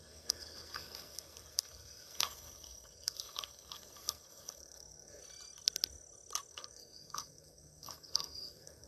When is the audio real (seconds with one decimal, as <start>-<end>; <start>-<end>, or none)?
5.2-6.5